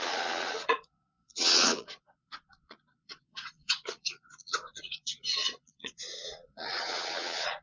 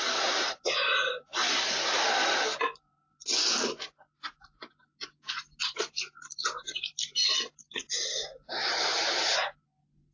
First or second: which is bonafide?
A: second